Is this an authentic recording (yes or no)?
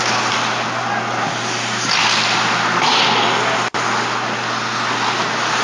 yes